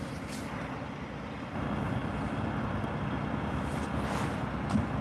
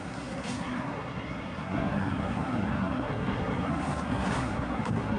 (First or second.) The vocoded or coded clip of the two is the second